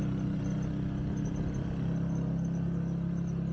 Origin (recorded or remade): recorded